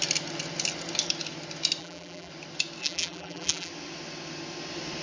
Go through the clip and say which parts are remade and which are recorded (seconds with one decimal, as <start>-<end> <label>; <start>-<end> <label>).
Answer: 0.0-1.8 recorded; 1.8-2.3 remade; 2.3-2.8 recorded; 2.8-3.7 remade; 3.7-5.0 recorded